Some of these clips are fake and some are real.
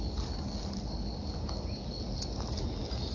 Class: real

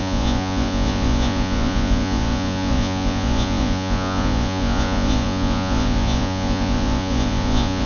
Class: fake